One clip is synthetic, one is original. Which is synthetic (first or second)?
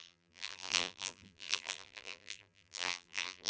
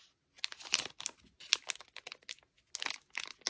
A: first